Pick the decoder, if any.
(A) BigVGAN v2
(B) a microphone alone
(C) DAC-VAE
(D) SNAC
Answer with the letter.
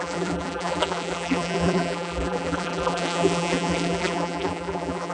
A